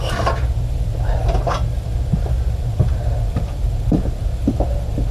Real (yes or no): yes